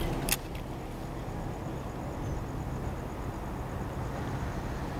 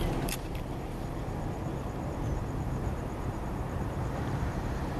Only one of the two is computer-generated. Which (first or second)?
second